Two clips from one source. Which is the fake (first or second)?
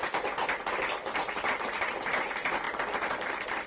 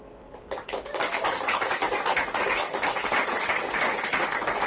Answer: second